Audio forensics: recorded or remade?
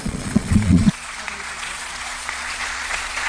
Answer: remade